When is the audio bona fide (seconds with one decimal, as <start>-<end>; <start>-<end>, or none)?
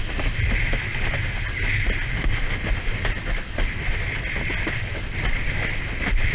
0.0-6.3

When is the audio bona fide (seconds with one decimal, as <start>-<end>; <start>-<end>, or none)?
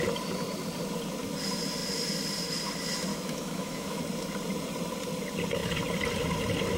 0.0-3.1; 4.0-6.8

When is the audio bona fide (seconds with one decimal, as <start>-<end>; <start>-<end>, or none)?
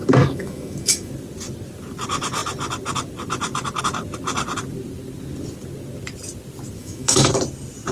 1.1-6.8; 7.3-7.9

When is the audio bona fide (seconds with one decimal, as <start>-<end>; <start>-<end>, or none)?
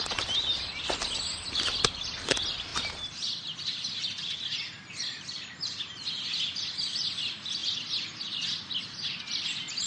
0.0-9.9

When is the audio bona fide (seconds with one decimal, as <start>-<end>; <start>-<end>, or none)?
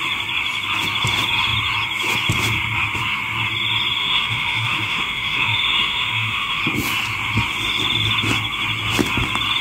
0.0-4.0; 6.6-9.6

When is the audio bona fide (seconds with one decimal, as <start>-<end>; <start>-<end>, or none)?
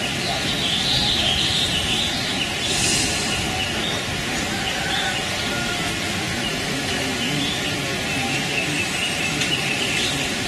0.0-6.3; 7.7-10.5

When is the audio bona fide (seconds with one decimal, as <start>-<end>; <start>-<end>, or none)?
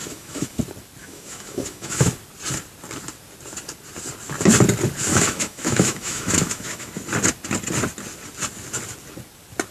0.6-1.0; 2.1-5.1; 6.9-9.7